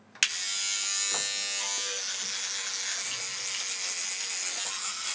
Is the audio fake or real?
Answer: real